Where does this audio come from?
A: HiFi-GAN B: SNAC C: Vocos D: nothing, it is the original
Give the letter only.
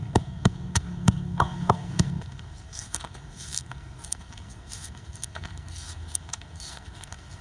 B